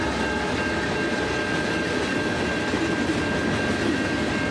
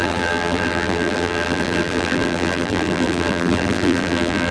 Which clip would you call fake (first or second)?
second